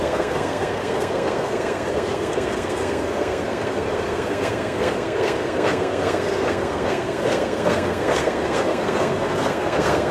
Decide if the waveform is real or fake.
fake